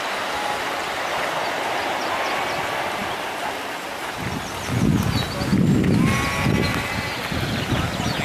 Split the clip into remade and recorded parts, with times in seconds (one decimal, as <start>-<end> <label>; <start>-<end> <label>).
0.0-8.2 recorded